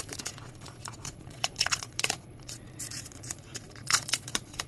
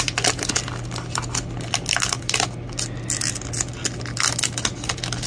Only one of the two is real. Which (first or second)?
second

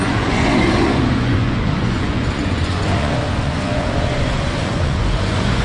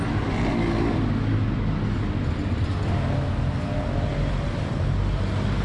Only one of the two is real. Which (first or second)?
second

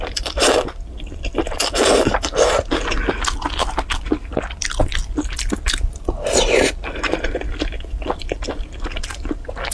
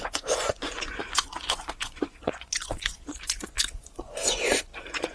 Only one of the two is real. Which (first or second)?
first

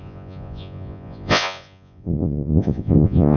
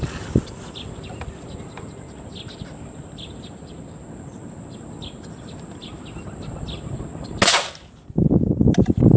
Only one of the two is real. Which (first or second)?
second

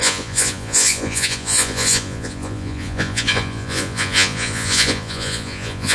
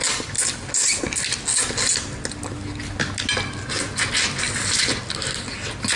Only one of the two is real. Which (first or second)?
second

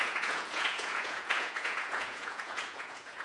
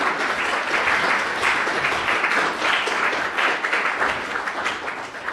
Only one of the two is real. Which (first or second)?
second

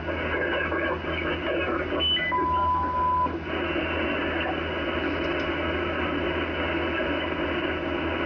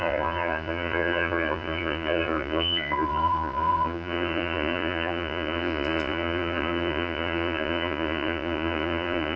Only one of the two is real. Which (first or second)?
first